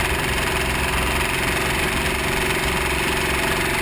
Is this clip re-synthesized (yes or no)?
no